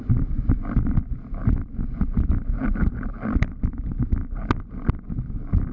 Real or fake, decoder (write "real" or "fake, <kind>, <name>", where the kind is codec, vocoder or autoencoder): real